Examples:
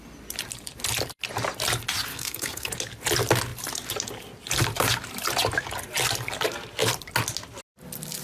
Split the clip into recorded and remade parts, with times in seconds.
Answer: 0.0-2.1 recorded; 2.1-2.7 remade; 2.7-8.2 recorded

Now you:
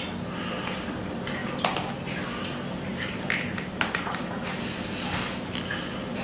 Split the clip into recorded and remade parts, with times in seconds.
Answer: 0.0-2.9 recorded; 2.9-4.2 remade; 4.2-6.2 recorded

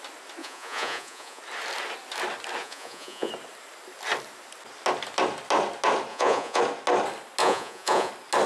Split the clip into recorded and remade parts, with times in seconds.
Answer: 0.0-0.4 recorded; 0.4-1.4 remade; 1.4-2.6 recorded; 2.6-3.3 remade; 3.3-6.1 recorded; 6.1-6.6 remade; 6.6-7.4 recorded; 7.4-8.1 remade; 8.1-8.5 recorded

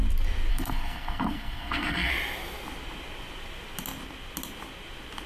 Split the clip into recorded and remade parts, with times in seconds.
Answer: 0.0-0.5 recorded; 0.5-2.1 remade; 2.1-5.3 recorded

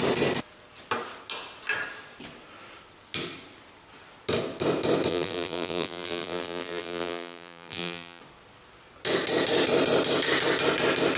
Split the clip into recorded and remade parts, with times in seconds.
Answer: 0.0-5.1 recorded; 5.1-8.2 remade; 8.2-11.2 recorded

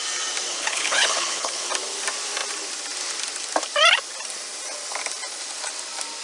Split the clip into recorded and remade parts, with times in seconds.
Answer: 0.0-0.5 recorded; 0.5-1.7 remade; 1.7-6.2 recorded

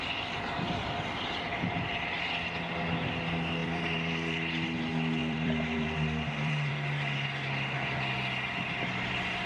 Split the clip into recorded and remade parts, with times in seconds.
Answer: 0.0-3.6 recorded; 3.6-4.5 remade; 4.5-5.2 recorded; 5.2-6.7 remade; 6.7-9.5 recorded

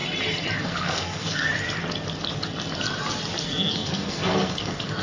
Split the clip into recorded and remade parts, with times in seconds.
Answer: 0.0-0.6 recorded; 0.6-1.5 remade; 1.5-3.4 recorded; 3.4-5.0 remade